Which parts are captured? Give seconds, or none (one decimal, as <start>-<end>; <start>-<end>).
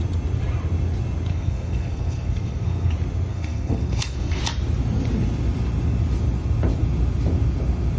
0.0-1.3; 2.9-3.3; 4.4-8.0